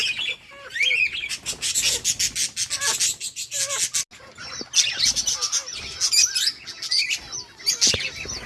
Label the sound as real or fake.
real